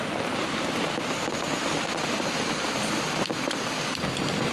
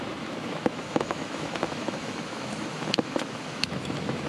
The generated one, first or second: second